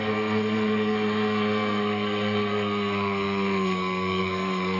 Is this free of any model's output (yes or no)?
no